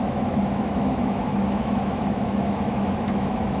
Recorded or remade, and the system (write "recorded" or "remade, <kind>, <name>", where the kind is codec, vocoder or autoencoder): remade, autoencoder, DAC-VAE